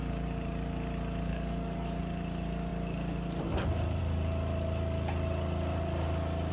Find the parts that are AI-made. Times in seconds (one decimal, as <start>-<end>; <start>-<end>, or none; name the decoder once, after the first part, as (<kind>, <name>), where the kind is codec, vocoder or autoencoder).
1.3-2.0 (codec, DAC)